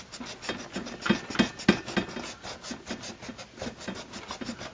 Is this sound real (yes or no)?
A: yes